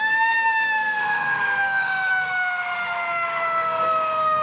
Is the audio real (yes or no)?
no